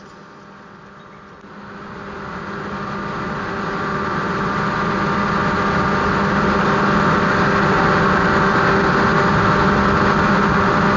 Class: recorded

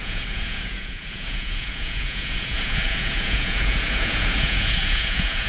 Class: remade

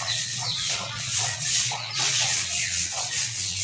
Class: remade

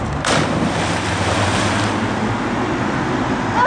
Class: recorded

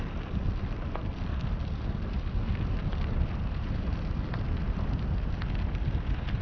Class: recorded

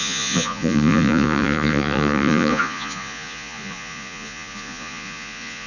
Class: remade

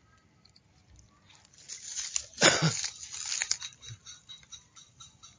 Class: recorded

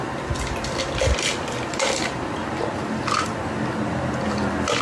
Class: recorded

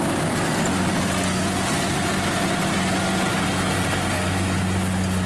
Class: recorded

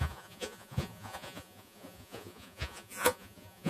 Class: remade